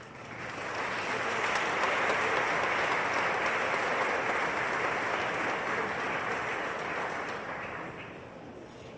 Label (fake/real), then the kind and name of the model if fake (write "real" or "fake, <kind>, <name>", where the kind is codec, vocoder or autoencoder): real